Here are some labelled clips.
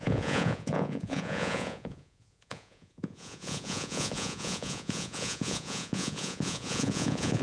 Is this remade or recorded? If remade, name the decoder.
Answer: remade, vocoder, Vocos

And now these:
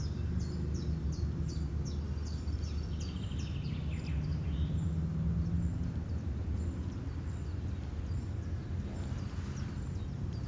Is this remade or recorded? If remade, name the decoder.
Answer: recorded